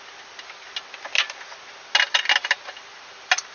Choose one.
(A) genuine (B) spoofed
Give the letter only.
A